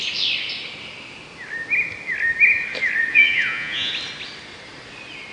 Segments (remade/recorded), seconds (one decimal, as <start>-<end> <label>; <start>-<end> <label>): 0.0-3.1 recorded; 3.1-3.9 remade; 3.9-5.3 recorded